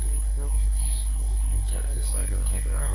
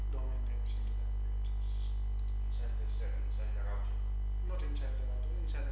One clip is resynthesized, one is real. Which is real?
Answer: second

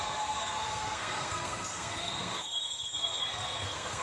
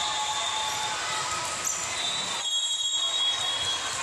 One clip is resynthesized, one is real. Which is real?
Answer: second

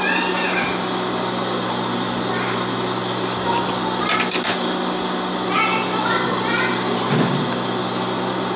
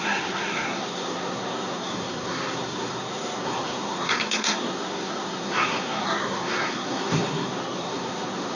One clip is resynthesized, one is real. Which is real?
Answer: first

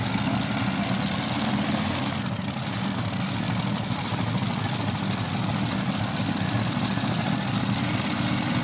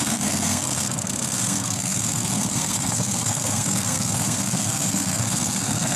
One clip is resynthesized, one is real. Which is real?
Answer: first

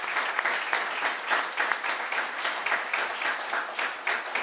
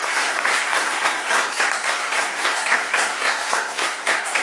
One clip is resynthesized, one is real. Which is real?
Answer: first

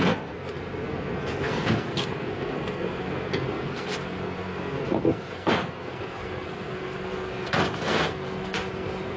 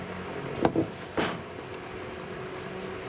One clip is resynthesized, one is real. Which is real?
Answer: second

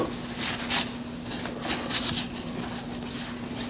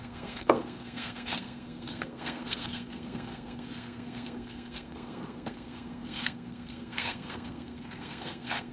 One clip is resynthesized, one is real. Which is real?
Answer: first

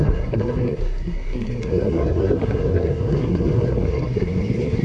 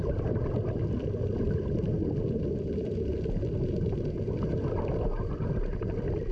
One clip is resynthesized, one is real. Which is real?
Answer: second